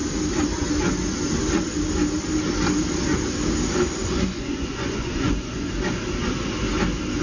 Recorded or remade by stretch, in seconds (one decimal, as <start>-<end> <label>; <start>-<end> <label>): 0.0-4.0 recorded; 4.0-5.7 remade; 5.7-7.2 recorded